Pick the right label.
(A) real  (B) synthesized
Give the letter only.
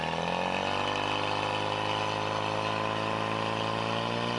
A